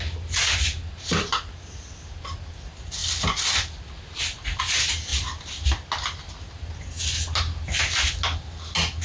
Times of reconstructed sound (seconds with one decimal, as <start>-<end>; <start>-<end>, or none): none